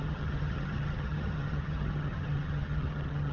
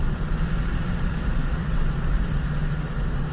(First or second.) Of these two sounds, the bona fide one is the second